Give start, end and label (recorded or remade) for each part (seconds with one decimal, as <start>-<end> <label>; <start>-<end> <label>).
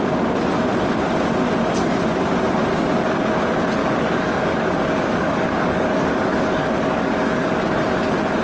0.0-3.8 recorded; 3.8-7.7 remade; 7.7-8.4 recorded